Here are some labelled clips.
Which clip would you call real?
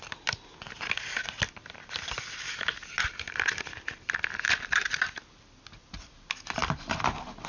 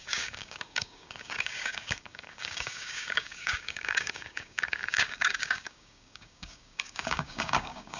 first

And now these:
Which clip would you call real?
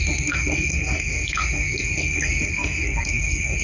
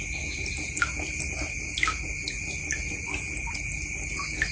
second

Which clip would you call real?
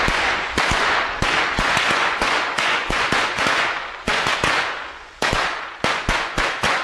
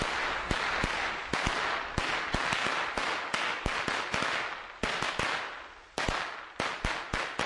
second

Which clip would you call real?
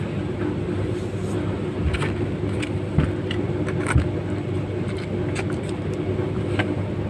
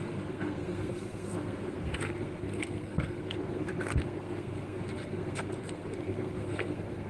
first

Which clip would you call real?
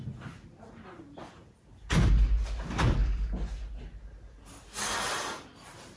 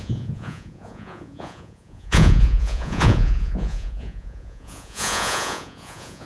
first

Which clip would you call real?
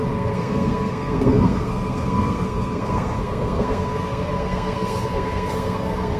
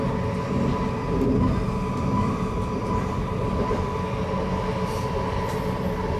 second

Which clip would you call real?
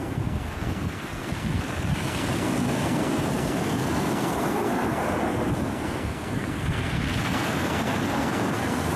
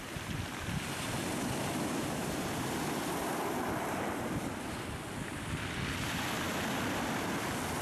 second